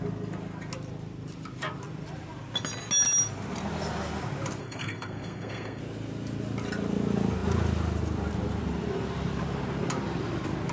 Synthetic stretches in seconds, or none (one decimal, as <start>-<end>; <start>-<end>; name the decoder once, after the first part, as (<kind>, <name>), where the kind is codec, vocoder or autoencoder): 4.6-5.8 (codec, SNAC)